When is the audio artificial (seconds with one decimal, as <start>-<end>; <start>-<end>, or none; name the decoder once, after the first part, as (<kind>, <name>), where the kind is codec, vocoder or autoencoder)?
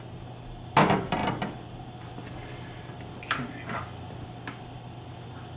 none